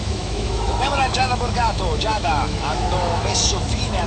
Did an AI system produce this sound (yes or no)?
yes